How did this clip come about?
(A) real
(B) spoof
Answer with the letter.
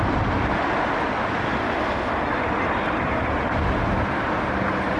A